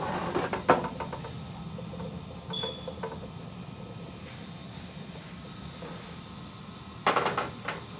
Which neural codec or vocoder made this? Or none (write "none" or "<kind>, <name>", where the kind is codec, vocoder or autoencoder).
none